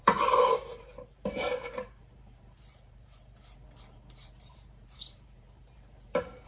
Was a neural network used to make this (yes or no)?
yes